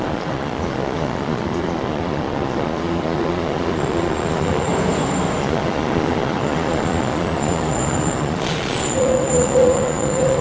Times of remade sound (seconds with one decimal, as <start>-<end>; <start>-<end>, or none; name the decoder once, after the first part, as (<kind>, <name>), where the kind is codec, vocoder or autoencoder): 0.0-4.7 (vocoder, Vocos); 5.4-10.4